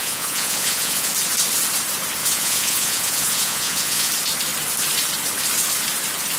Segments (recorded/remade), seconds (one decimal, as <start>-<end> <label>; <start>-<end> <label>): 0.0-1.1 remade; 1.1-2.2 recorded; 2.2-4.1 remade; 4.1-6.4 recorded